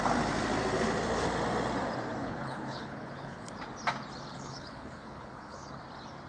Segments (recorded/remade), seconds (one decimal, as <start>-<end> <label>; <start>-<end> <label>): 0.0-2.2 recorded; 2.2-3.5 remade; 3.5-4.3 recorded; 4.3-5.7 remade; 5.7-6.3 recorded